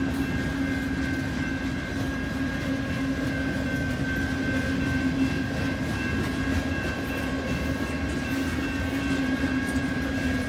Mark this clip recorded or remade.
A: recorded